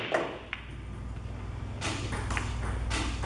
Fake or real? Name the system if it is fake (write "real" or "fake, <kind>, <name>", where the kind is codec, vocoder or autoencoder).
real